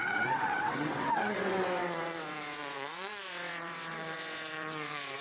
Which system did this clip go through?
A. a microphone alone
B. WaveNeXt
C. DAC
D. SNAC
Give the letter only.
B